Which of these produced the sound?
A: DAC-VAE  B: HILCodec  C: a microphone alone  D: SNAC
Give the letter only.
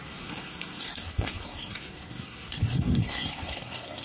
D